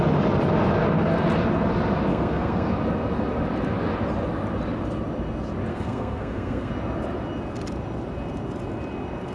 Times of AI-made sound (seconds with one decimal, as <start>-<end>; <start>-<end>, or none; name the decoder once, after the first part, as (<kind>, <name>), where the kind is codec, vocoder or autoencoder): 2.1-2.7 (codec, SNAC); 5.7-6.7